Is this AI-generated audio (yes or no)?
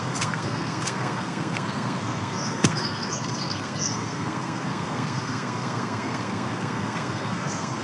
yes